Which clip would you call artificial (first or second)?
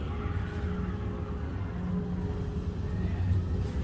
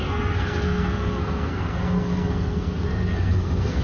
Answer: second